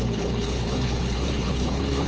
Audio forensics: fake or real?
fake